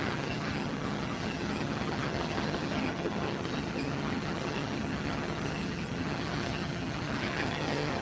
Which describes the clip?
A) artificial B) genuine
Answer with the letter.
A